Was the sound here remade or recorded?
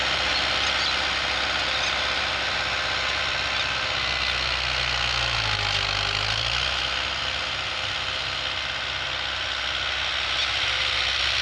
recorded